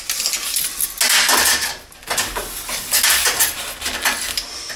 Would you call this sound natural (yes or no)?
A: yes